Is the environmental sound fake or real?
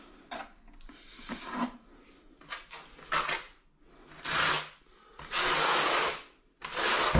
real